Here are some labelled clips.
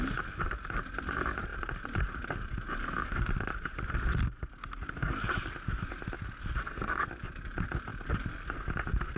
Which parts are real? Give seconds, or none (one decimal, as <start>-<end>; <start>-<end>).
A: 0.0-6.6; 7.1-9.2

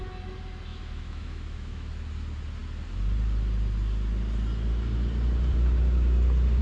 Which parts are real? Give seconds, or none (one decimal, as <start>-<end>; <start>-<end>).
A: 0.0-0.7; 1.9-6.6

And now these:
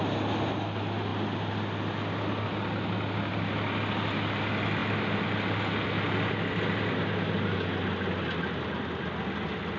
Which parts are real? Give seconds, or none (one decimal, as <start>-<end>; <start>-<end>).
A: 0.0-9.8

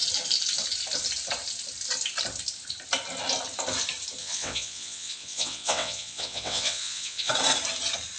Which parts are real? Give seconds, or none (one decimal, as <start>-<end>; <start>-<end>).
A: 0.0-4.2; 7.3-8.2

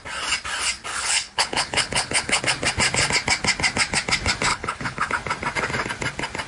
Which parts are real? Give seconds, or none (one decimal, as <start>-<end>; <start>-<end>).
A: 0.0-0.9; 2.4-4.5; 5.1-6.5

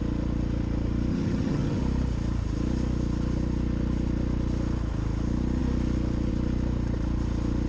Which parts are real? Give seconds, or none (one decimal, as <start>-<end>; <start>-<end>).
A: 0.0-1.1; 1.8-7.7